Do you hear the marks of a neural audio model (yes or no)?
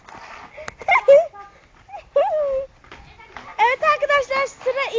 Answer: no